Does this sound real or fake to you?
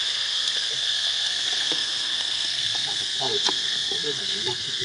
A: fake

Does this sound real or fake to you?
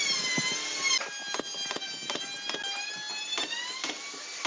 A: real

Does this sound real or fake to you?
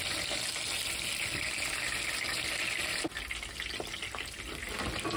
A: real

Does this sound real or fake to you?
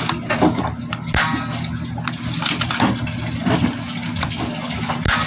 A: real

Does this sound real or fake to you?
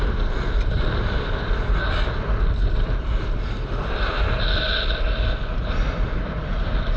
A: real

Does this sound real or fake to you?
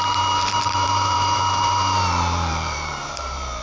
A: fake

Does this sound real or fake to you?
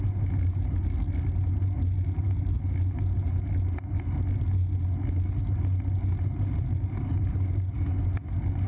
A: real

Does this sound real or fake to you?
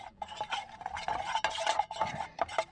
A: real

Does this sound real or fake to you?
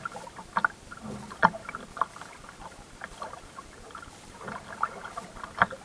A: real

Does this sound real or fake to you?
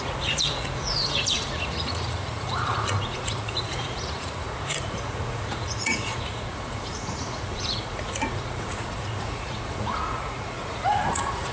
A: fake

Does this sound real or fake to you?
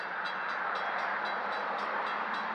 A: real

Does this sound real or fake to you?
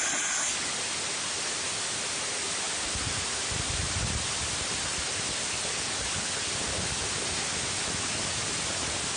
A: real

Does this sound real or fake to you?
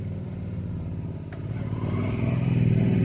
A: fake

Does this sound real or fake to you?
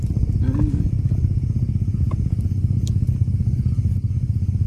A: real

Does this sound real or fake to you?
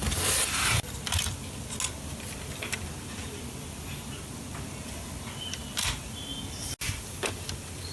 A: real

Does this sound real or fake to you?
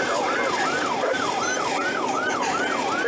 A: fake